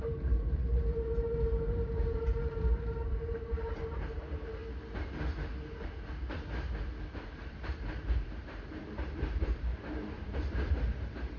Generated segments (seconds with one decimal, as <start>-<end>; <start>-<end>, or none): 0.0-4.6; 7.3-11.4